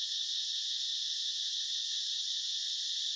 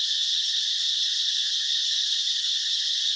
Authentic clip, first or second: first